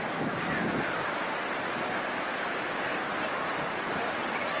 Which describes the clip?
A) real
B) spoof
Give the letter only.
A